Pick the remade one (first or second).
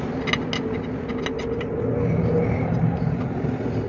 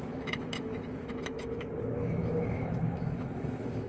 second